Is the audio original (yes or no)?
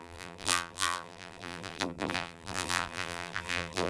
no